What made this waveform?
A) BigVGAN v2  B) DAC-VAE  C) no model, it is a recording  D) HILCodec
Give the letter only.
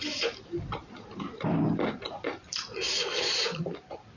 A